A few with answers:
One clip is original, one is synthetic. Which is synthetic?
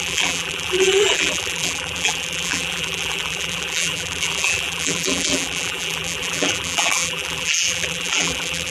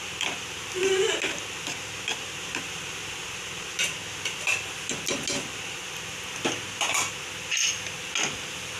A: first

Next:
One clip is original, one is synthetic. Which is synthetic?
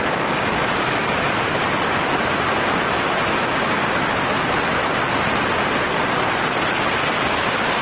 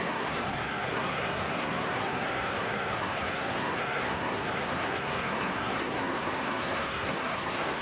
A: second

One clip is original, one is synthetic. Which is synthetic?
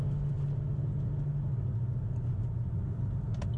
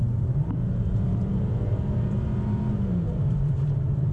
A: second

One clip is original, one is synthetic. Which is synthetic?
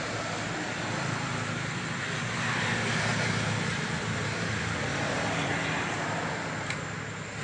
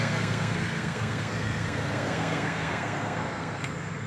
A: second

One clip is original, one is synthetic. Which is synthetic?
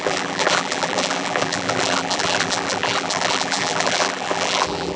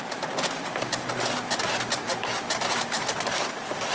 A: first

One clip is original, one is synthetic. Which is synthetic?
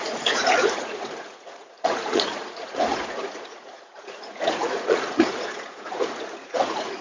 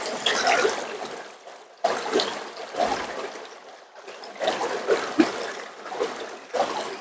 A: first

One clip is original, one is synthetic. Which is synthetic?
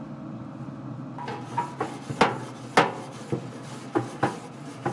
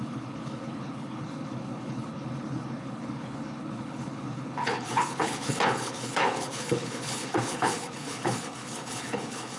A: second